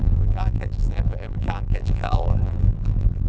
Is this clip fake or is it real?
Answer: fake